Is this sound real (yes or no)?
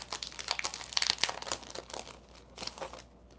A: yes